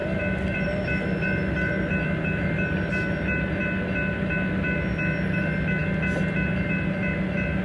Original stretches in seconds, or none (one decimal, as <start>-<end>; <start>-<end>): 0.0-7.6

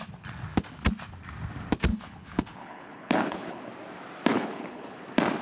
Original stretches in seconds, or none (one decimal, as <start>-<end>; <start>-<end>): 0.0-1.9; 3.7-4.3; 5.0-5.4

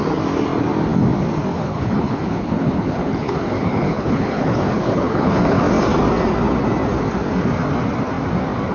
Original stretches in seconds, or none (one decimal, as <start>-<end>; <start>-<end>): 0.0-1.5; 5.6-8.7

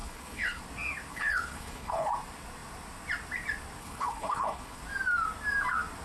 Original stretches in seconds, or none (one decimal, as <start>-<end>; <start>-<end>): 0.6-1.1; 2.1-3.8; 4.8-6.0

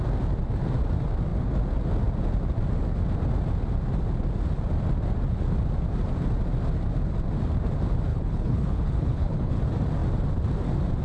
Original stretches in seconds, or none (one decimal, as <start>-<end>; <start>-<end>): 0.0-8.1; 9.5-11.0

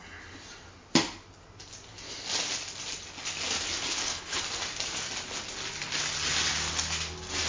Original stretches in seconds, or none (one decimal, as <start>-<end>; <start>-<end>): 0.0-3.8; 4.4-7.5

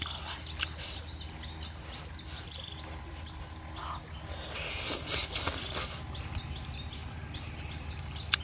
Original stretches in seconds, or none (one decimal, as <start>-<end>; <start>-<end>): 0.0-8.4

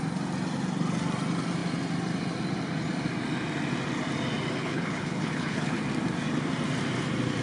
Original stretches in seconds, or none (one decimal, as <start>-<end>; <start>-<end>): 0.0-4.6; 5.8-7.4